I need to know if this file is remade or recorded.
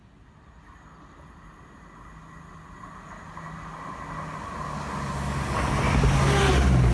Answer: recorded